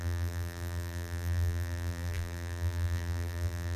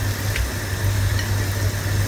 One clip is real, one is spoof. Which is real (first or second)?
second